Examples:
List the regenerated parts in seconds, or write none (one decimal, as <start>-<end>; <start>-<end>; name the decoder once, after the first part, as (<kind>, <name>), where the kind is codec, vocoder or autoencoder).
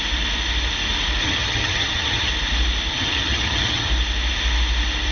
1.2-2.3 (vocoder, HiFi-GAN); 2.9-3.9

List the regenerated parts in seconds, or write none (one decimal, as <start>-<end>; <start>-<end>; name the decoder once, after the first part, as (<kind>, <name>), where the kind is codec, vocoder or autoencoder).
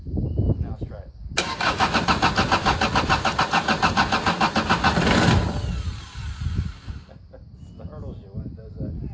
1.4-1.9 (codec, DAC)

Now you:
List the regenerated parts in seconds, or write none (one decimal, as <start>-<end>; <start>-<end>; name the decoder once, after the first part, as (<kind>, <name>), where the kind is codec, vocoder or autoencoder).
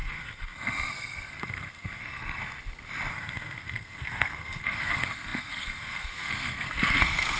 0.0-2.4 (codec, SNAC); 3.1-7.4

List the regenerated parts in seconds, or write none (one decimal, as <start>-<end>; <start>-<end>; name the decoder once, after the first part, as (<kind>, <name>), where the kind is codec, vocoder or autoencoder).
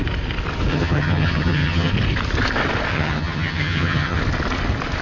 0.7-1.9 (vocoder, HiFi-GAN); 2.9-4.2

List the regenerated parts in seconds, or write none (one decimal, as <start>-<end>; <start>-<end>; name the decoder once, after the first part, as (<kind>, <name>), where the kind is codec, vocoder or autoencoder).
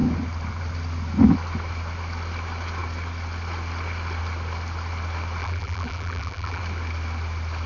5.4-6.6 (vocoder, BigVGAN v2)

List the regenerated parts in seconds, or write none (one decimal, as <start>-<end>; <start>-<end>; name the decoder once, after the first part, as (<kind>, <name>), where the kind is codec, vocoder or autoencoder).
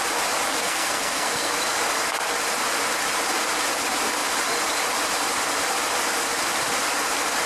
0.6-1.5 (codec, SNAC)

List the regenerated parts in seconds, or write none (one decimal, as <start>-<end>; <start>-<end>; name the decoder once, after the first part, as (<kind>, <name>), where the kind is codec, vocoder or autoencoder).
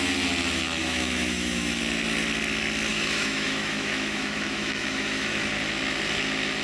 0.8-1.8 (autoencoder, DAC-VAE); 2.9-5.5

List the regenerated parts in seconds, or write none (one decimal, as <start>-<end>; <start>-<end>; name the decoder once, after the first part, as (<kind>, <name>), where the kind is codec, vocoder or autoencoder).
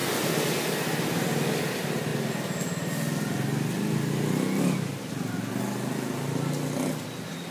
none